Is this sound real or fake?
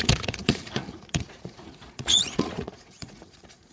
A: fake